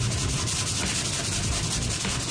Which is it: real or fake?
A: real